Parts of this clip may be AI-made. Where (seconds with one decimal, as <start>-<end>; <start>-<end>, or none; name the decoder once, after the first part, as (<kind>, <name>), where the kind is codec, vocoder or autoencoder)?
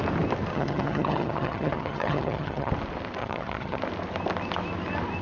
0.5-2.7 (vocoder, HiFi-GAN); 3.2-3.8